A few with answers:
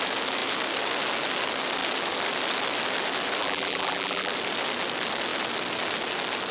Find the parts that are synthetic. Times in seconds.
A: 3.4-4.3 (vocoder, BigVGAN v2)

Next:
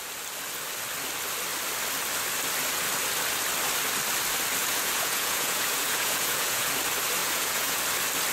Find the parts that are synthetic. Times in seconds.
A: 4.6-6.7 (vocoder, Vocos); 7.2-7.8

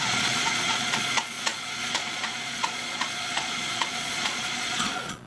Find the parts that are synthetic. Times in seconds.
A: 0.0-5.3 (vocoder, Vocos)

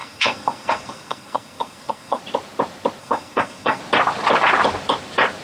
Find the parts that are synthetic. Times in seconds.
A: 0.0-2.2 (codec, SNAC); 3.0-3.8

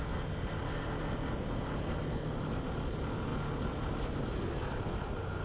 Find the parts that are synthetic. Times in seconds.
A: none